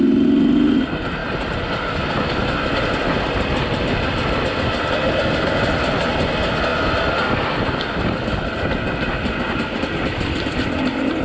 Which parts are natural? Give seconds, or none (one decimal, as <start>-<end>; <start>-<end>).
0.0-11.2